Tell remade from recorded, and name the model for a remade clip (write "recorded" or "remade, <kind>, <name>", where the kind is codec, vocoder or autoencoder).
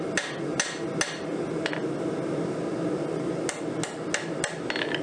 recorded